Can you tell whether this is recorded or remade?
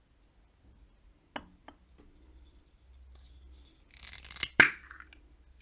recorded